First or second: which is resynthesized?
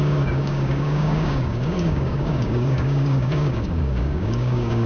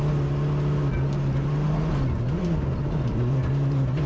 first